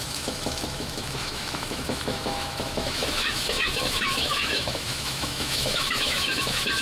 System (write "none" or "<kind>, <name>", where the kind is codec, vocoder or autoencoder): autoencoder, DAC-VAE